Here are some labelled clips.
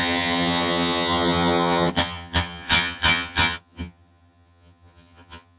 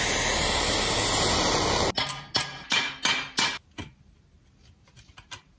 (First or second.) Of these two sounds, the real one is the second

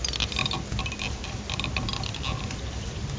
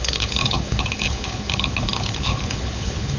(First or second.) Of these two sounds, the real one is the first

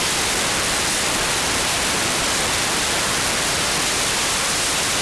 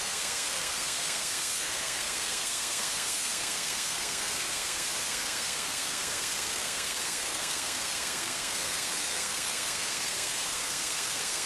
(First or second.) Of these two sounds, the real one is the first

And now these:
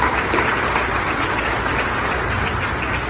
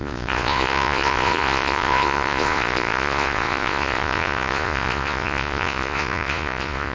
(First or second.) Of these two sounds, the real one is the first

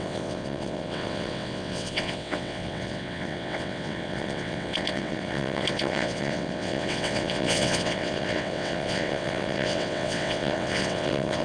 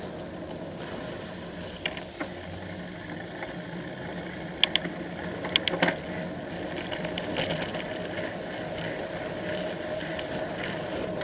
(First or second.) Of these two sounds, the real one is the second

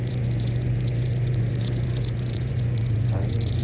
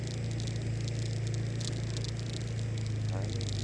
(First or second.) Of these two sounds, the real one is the second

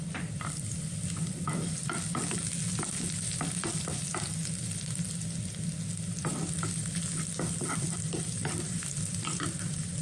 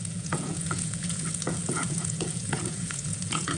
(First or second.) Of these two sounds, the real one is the first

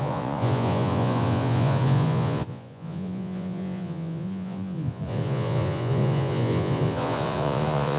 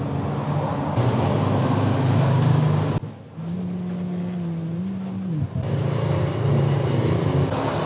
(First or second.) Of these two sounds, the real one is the second